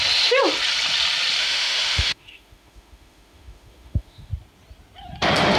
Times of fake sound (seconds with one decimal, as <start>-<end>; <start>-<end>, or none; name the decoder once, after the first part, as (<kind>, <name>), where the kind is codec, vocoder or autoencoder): 1.4-4.3 (autoencoder, DAC-VAE)